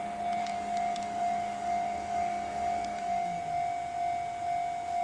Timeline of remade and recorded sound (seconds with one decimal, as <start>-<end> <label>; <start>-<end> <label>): 0.0-0.4 recorded; 0.4-3.4 remade; 3.4-5.0 recorded